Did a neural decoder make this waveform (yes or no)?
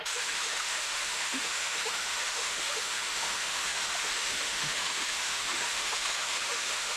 yes